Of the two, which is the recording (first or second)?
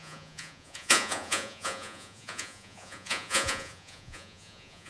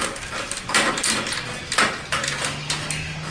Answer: second